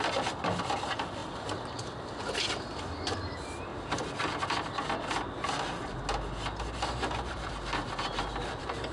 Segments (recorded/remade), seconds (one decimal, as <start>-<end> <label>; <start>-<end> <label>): 0.0-1.2 remade; 1.2-2.8 recorded; 2.8-3.7 remade; 3.7-7.1 recorded; 7.1-8.9 remade